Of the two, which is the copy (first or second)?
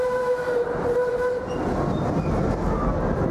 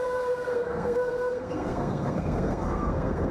second